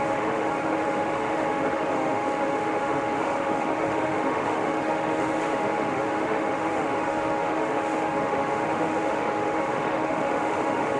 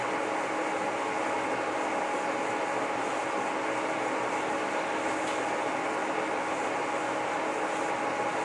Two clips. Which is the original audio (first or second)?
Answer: second